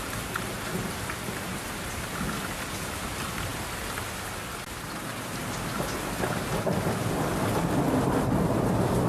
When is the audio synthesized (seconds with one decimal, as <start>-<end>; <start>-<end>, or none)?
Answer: none